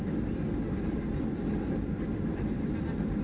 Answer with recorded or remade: recorded